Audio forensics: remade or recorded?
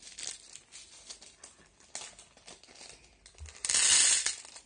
recorded